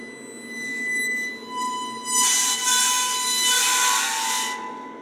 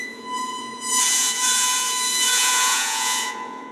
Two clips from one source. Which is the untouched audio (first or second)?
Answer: first